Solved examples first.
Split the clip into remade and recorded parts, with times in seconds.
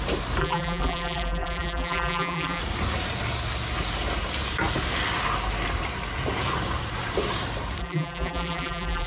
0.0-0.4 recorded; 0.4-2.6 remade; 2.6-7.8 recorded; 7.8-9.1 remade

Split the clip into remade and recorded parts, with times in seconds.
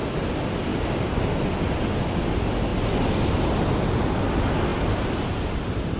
0.0-0.7 recorded; 0.7-1.2 remade; 1.2-6.0 recorded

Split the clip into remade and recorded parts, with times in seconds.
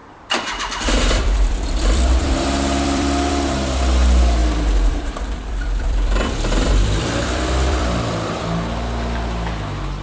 0.0-3.3 remade; 3.3-4.4 recorded; 4.4-8.3 remade; 8.3-10.0 recorded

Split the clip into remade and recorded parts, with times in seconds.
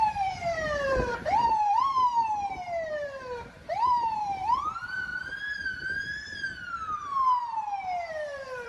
0.0-5.1 remade; 5.1-8.1 recorded; 8.1-8.7 remade